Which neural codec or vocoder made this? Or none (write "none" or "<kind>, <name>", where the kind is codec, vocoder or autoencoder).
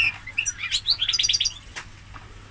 none